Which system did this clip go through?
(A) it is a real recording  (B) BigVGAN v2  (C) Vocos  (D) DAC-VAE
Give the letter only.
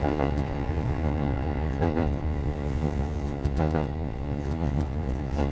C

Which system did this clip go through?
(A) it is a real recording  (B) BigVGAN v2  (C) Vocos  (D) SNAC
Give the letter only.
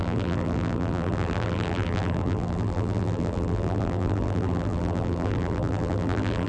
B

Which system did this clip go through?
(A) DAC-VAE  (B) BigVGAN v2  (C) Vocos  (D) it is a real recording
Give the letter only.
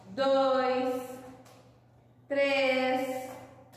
D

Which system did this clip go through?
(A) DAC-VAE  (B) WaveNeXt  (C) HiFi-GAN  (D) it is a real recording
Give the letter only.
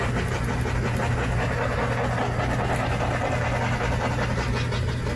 D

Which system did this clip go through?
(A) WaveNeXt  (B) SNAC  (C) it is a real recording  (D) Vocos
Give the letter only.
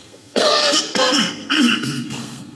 B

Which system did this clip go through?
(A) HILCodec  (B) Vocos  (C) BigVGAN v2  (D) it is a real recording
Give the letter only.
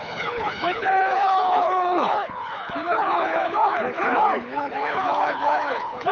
A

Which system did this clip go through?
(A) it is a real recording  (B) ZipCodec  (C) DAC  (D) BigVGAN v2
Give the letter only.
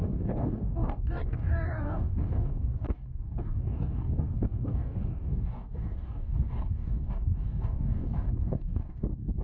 C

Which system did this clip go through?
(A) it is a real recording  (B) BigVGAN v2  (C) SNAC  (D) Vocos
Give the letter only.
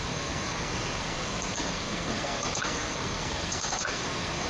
C